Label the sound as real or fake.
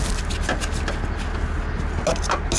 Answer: real